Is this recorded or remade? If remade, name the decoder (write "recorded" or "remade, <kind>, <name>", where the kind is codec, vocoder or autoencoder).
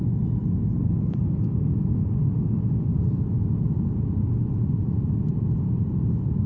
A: recorded